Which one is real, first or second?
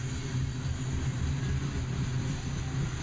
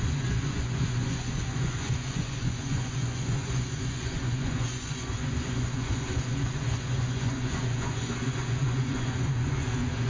first